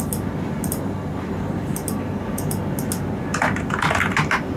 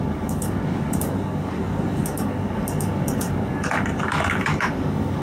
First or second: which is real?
first